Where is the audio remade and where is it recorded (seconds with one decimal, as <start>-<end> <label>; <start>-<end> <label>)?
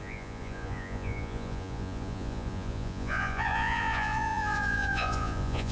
0.0-5.7 remade